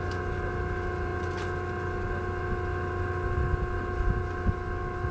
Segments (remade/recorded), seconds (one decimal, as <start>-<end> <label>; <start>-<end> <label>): 0.0-5.1 recorded